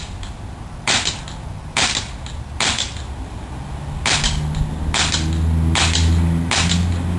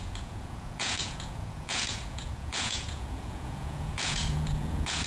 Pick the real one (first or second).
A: first